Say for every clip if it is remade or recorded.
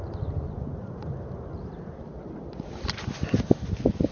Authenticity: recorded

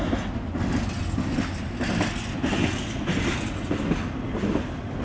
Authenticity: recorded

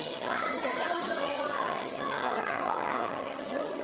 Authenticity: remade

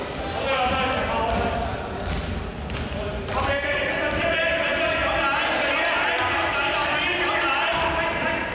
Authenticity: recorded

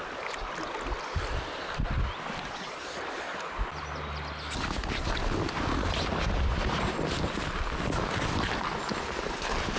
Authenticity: recorded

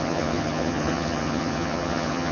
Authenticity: remade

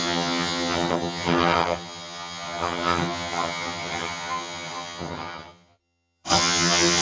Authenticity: remade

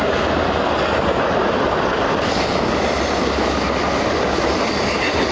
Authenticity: recorded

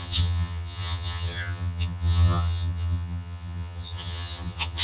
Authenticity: remade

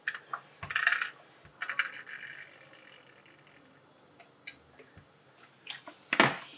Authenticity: recorded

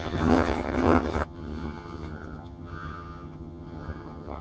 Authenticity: remade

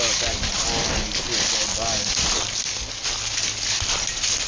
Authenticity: recorded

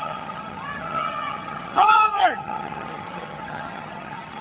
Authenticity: remade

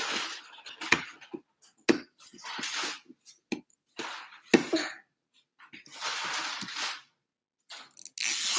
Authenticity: recorded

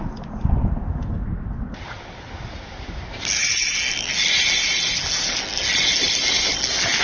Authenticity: recorded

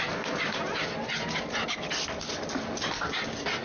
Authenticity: recorded